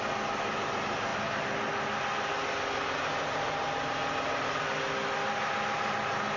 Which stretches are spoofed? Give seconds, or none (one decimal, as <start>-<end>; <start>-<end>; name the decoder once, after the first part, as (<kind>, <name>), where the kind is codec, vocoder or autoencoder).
none

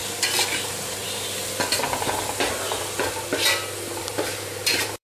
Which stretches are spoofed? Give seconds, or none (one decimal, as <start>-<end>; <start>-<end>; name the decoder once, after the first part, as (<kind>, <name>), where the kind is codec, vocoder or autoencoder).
0.5-1.0 (vocoder, BigVGAN v2); 4.0-5.0

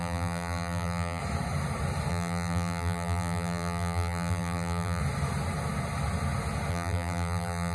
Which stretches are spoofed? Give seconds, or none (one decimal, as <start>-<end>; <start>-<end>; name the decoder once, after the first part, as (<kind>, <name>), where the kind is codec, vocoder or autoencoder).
0.0-1.2 (vocoder, BigVGAN v2); 2.1-5.0; 6.7-7.7

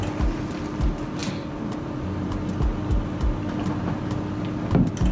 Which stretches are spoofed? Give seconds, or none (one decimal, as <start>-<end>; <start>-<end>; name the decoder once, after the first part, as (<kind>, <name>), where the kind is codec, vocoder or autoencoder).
none